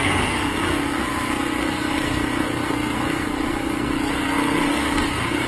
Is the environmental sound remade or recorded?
remade